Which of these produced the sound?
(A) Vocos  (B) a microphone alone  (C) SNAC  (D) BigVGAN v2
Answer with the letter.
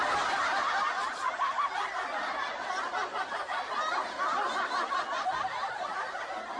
B